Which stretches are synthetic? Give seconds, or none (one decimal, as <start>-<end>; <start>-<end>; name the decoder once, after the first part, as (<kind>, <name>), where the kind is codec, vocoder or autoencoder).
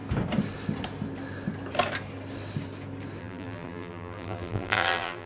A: 3.2-5.3 (vocoder, BigVGAN v2)